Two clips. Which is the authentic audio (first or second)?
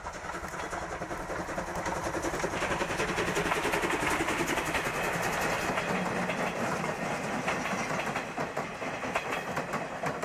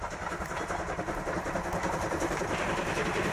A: first